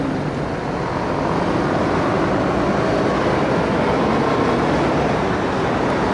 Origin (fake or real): real